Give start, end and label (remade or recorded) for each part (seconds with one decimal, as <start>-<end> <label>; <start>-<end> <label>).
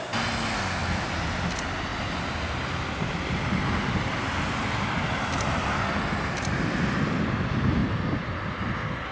0.0-9.1 recorded